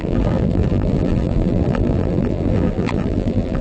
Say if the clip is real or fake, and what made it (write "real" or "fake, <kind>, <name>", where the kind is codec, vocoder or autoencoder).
fake, vocoder, BigVGAN v2